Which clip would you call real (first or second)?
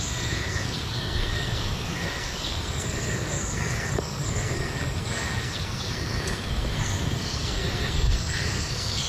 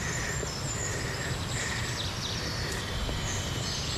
second